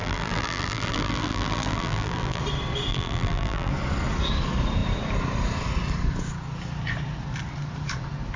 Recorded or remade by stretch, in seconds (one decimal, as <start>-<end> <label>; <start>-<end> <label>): 0.0-2.4 remade; 2.4-2.9 recorded; 2.9-3.7 remade; 3.7-8.4 recorded